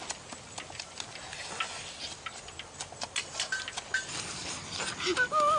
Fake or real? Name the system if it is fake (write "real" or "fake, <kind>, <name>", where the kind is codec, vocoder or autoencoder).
real